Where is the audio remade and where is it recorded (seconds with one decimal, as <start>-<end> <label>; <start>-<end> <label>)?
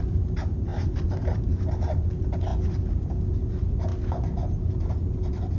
0.0-0.7 recorded; 0.7-1.6 remade; 1.6-5.6 recorded